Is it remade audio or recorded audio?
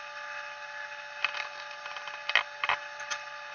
recorded